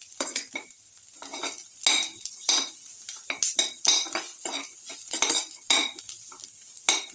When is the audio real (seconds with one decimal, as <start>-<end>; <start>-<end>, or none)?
1.3-1.9; 4.3-6.0